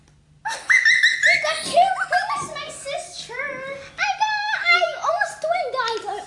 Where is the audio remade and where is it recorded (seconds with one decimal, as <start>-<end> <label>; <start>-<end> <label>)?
0.0-4.4 recorded; 4.4-5.1 remade; 5.1-6.3 recorded